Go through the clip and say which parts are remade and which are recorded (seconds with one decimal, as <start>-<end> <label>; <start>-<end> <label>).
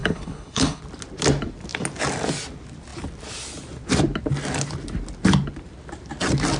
0.0-0.8 remade; 0.8-6.6 recorded